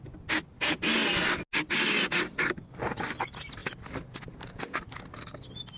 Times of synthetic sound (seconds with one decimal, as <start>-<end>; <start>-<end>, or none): none